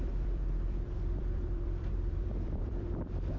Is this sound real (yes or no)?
no